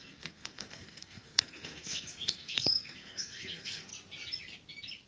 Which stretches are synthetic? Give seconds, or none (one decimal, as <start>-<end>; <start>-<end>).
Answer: 0.0-3.9